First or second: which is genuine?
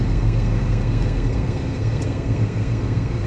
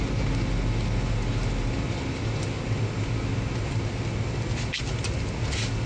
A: second